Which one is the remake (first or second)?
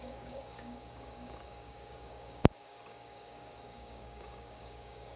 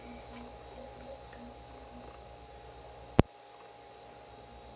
first